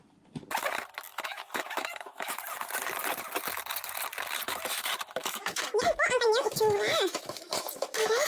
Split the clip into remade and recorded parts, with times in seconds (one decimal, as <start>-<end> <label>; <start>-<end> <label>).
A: 0.0-1.1 recorded; 1.1-2.4 remade; 2.4-5.2 recorded; 5.2-8.3 remade